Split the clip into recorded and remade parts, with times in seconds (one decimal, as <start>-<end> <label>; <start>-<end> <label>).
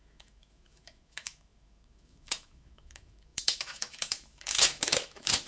0.0-5.5 remade